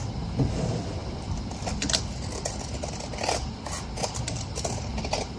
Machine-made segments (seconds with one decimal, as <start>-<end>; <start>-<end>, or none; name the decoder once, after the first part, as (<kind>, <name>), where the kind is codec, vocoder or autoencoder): 1.0-2.0 (vocoder, BigVGAN v2); 3.1-3.6